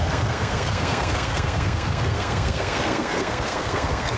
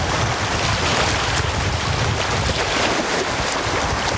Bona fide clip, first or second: second